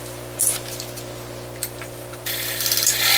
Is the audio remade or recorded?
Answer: recorded